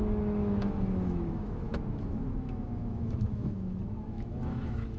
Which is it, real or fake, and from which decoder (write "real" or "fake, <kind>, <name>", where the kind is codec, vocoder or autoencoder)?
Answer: fake, autoencoder, DAC-VAE